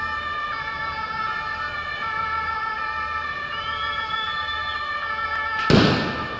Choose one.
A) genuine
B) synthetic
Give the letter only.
A